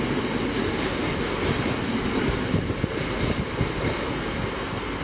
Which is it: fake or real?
real